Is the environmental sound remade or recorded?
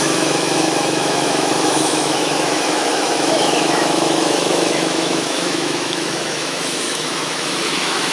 remade